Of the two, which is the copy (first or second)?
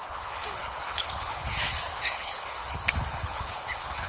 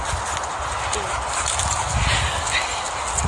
first